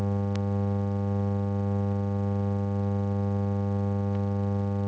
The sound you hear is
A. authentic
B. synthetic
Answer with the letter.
A